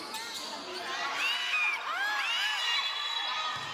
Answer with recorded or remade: recorded